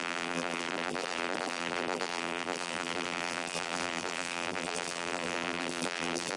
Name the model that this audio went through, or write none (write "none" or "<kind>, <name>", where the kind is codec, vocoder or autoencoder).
vocoder, BigVGAN v2